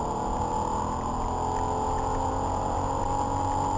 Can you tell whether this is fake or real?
real